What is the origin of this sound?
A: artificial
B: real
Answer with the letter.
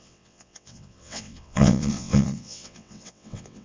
A